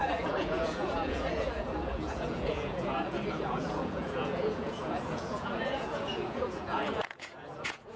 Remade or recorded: remade